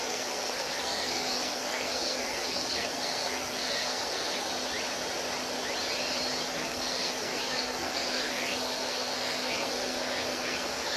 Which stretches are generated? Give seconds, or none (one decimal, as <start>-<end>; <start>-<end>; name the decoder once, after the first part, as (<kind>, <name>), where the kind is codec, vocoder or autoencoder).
0.0-4.5 (codec, SNAC); 6.5-11.0